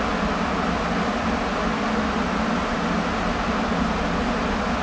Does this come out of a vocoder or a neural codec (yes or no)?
no